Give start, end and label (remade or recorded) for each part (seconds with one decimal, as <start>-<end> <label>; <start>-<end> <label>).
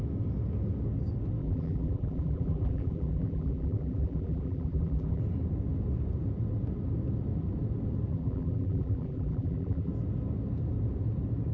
0.0-1.4 recorded; 1.4-5.2 remade; 5.2-8.1 recorded; 8.1-9.9 remade; 9.9-11.5 recorded